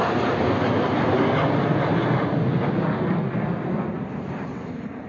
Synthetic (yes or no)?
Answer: no